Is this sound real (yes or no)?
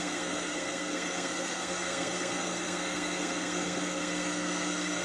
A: no